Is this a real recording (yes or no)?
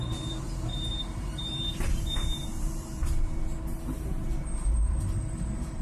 no